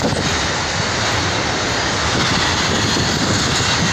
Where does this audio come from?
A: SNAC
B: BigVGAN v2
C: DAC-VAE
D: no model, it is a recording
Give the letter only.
D